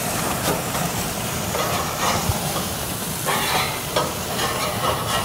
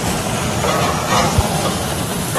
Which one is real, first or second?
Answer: second